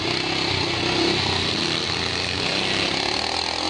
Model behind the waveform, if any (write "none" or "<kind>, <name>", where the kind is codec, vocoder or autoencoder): none